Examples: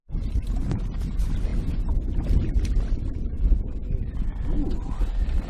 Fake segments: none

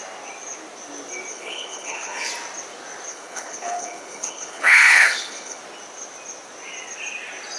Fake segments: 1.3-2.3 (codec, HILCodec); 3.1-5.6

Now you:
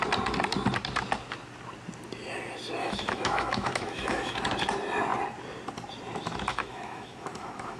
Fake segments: 2.8-4.5 (autoencoder, DAC-VAE); 6.5-7.8

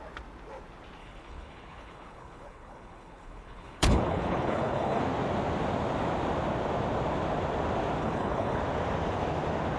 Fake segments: 1.0-5.0 (codec, HILCodec); 8.0-8.6

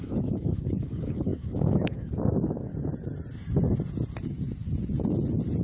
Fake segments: 0.0-2.7 (codec, DAC)

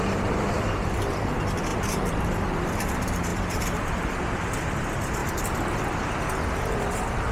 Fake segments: 0.0-5.2 (vocoder, BigVGAN v2); 6.7-7.3

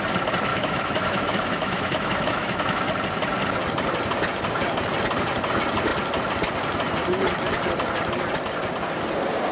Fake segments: 0.5-2.9 (autoencoder, DAC-VAE)